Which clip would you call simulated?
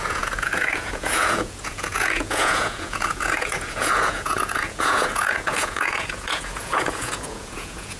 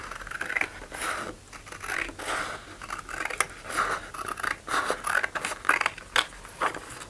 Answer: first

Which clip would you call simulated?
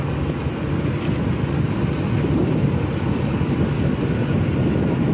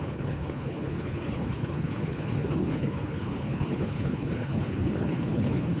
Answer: second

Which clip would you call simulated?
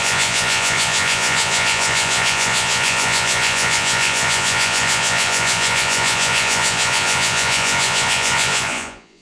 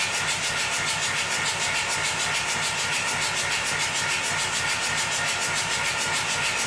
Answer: first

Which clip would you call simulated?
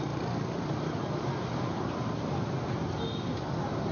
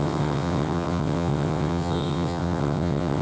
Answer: second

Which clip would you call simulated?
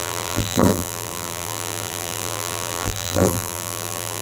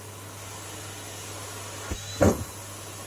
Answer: first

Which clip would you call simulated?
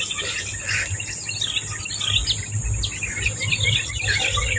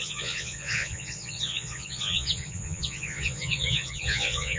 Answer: second